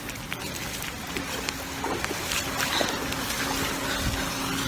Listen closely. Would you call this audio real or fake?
real